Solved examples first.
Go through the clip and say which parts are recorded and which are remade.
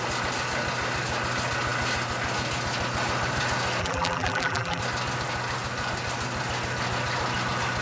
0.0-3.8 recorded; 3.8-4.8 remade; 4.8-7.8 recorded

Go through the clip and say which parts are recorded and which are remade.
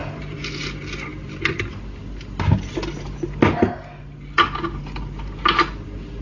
0.0-0.6 remade; 0.6-6.2 recorded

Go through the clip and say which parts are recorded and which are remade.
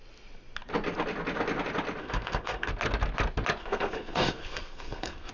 0.0-2.0 recorded; 2.0-2.7 remade; 2.7-3.6 recorded; 3.6-5.3 remade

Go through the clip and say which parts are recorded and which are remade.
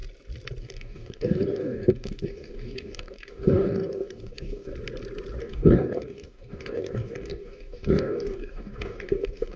0.0-0.6 recorded; 0.6-4.7 remade; 4.7-5.4 recorded; 5.4-9.6 remade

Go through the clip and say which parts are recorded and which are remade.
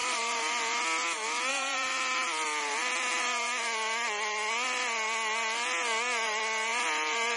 0.0-0.8 remade; 0.8-1.5 recorded; 1.5-4.5 remade; 4.5-6.7 recorded; 6.7-7.4 remade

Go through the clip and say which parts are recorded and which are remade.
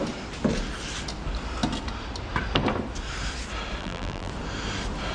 0.0-3.8 recorded; 3.8-4.3 remade; 4.3-5.1 recorded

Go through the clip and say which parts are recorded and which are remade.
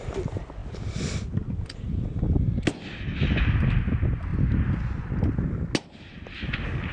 0.0-4.3 recorded; 4.3-5.1 remade; 5.1-6.9 recorded